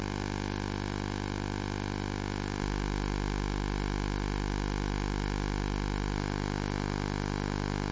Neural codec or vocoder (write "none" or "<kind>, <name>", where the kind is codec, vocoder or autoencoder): none